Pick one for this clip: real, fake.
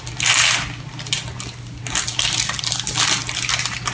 real